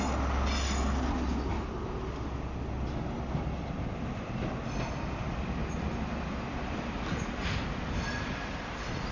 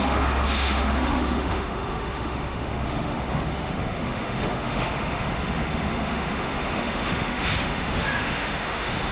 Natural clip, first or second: first